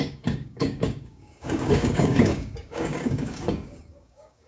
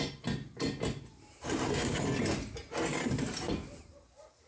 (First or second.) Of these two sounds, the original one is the second